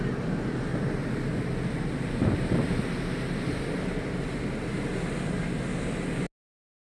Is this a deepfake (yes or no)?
no